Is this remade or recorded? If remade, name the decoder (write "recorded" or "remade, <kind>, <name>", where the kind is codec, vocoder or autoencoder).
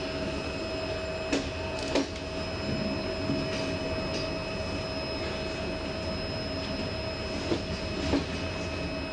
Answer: recorded